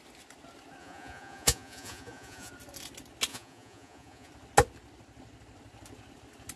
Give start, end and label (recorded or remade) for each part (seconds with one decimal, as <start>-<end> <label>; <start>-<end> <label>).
0.0-0.8 recorded; 0.8-2.5 remade; 2.5-3.3 recorded; 3.3-4.3 remade; 4.3-6.6 recorded